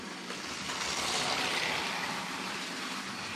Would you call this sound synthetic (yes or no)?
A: no